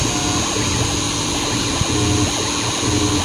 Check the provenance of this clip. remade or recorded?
recorded